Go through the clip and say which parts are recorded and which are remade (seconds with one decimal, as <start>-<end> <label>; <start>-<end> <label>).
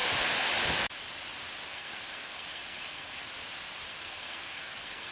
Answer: 0.0-1.7 recorded; 1.7-3.2 remade; 3.2-3.9 recorded; 3.9-5.1 remade